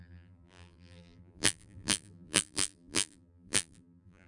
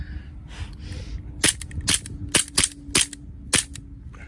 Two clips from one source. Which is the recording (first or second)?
second